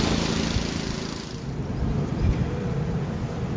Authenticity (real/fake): real